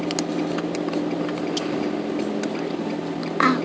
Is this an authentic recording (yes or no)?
yes